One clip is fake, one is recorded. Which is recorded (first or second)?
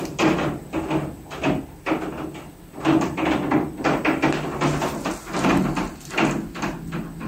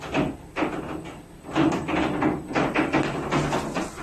first